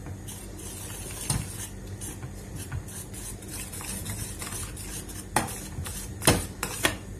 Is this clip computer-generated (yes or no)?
no